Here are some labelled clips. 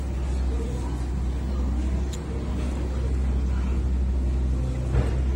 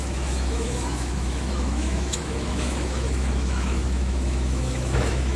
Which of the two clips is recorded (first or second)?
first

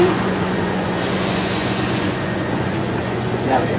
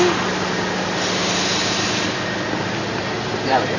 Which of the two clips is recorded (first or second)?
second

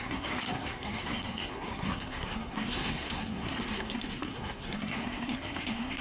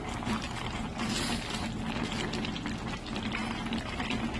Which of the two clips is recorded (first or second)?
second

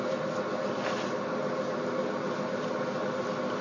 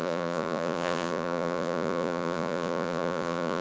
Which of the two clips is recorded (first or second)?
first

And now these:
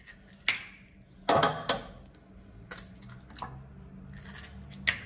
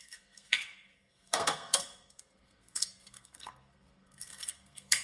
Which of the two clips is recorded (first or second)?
first